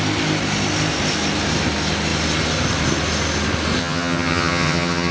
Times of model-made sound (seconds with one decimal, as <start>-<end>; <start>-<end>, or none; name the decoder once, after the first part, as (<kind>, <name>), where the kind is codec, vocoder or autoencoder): 3.8-5.1 (vocoder, HiFi-GAN)